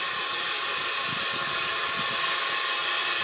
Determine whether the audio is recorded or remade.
recorded